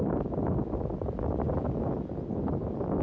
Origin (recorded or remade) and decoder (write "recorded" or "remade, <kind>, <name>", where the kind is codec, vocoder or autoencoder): recorded